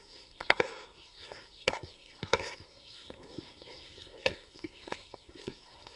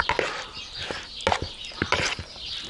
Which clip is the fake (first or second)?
first